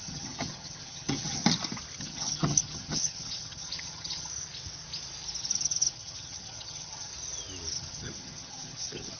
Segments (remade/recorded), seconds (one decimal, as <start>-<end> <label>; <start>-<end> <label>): 0.0-1.4 remade; 1.4-2.0 recorded; 2.0-4.3 remade; 4.3-5.4 recorded; 5.4-7.1 remade; 7.1-7.7 recorded; 7.7-9.2 remade